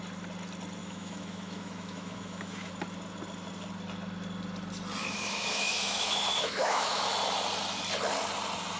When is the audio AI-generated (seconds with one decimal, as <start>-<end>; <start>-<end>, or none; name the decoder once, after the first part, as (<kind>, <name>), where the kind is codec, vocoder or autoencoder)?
0.8-2.7 (autoencoder, DAC-VAE); 5.0-7.1